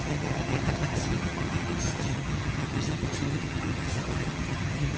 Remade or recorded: remade